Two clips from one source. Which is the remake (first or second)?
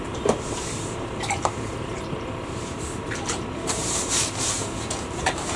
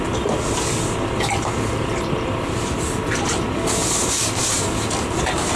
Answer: first